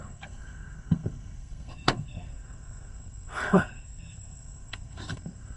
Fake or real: fake